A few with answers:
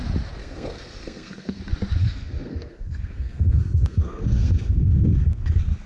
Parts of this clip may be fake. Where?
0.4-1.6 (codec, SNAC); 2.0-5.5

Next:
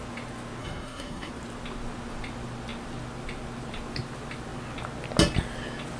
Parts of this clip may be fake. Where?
0.6-1.3 (codec, SNAC)

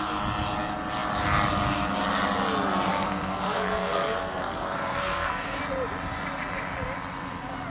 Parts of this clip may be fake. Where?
2.9-5.6 (codec, SNAC)

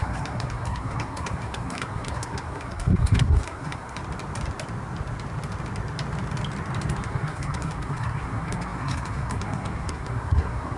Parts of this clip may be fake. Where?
0.0-4.0 (codec, SNAC); 7.0-10.8

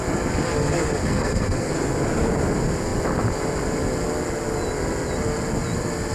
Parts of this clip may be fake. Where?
1.0-1.7 (codec, SNAC)

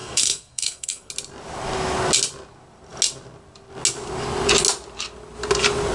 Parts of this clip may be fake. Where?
0.0-1.1 (codec, SNAC)